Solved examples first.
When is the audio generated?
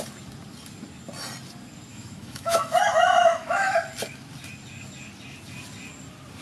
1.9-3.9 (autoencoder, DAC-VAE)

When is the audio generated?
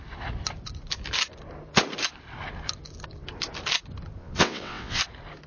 4.2-5.0 (vocoder, WaveNeXt)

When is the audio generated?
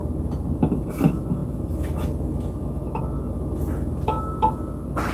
none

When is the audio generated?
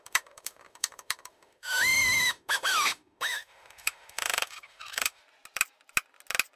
0.0-5.2 (autoencoder, DAC-VAE)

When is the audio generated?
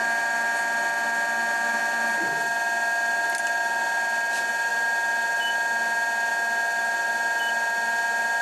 none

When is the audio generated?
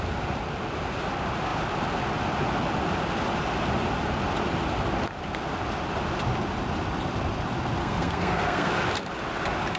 7.8-8.7 (codec, SNAC)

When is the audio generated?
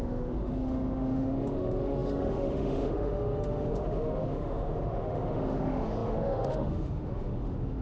0.0-7.8 (autoencoder, DAC-VAE)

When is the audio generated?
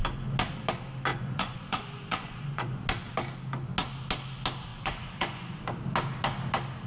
1.1-2.8 (vocoder, Vocos); 4.7-5.6